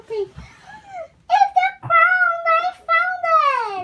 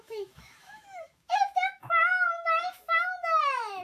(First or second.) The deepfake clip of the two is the second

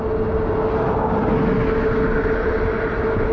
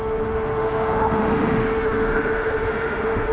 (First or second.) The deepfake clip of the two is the second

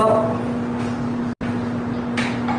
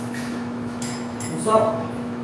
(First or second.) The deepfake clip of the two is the second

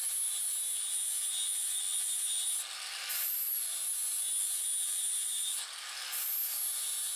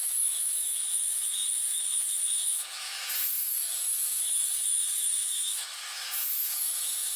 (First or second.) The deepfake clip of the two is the second